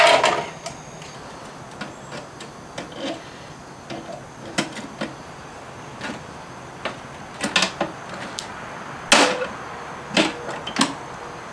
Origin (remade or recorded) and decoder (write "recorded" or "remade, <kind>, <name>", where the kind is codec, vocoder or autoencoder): recorded